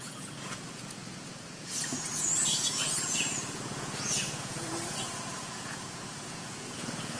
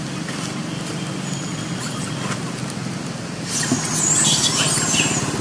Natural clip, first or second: second